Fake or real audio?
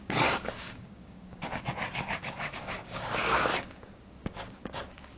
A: fake